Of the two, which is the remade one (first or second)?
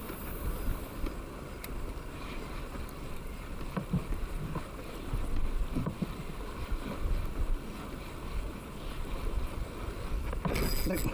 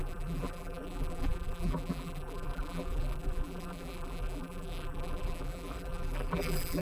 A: second